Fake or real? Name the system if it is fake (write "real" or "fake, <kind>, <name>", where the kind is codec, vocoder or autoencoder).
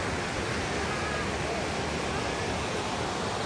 real